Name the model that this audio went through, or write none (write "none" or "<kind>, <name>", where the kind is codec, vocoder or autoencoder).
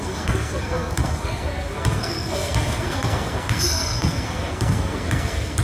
codec, SNAC